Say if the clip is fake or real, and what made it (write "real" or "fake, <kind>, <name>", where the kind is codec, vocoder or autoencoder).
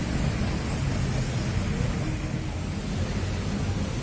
real